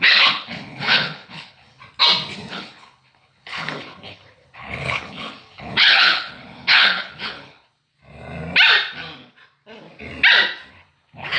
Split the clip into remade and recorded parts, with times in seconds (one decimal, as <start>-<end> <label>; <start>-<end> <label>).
0.0-1.8 remade; 1.8-2.5 recorded; 2.5-7.9 remade; 7.9-10.7 recorded; 10.7-11.4 remade